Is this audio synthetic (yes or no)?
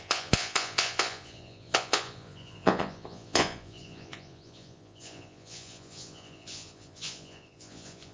yes